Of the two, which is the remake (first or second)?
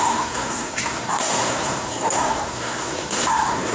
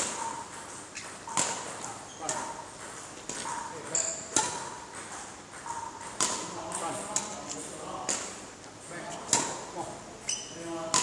first